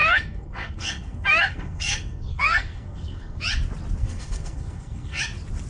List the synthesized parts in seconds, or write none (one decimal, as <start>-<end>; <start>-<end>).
0.0-3.4; 4.0-5.2